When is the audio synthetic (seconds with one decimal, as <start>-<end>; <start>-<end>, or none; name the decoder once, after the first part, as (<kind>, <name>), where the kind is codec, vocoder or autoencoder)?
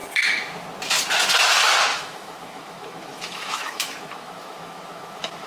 1.9-5.5 (autoencoder, DAC-VAE)